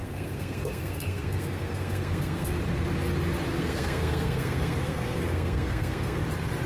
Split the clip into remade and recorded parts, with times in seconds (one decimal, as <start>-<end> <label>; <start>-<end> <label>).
0.0-2.6 remade; 2.6-3.5 recorded; 3.5-6.2 remade; 6.2-6.7 recorded